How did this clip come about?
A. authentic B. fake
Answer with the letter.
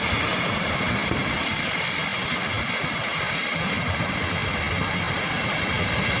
A